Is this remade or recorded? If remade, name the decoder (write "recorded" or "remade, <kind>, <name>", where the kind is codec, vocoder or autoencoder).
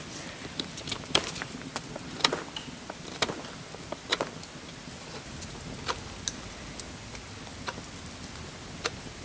recorded